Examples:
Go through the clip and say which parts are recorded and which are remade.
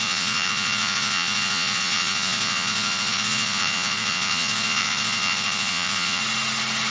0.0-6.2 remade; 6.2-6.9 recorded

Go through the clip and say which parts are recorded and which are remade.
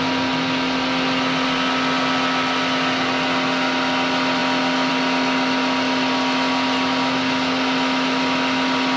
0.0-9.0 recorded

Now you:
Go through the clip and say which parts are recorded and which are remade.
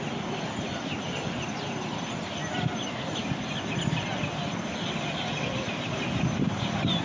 0.0-7.0 recorded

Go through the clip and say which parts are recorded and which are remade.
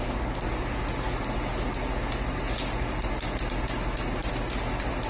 0.0-5.1 recorded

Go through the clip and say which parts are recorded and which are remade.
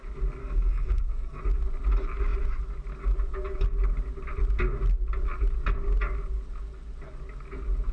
0.0-0.4 recorded; 0.4-1.4 remade; 1.4-7.9 recorded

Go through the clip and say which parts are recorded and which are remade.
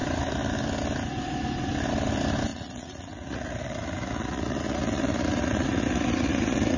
0.0-2.5 recorded; 2.5-6.8 remade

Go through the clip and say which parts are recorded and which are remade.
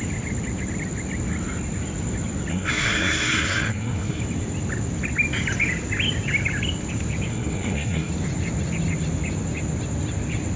0.0-2.5 recorded; 2.5-4.2 remade; 4.2-7.3 recorded; 7.3-8.1 remade; 8.1-10.6 recorded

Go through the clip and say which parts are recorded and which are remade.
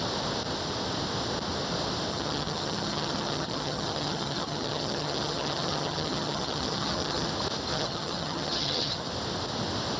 0.0-2.1 recorded; 2.1-7.3 remade; 7.3-7.7 recorded; 7.7-9.1 remade; 9.1-10.0 recorded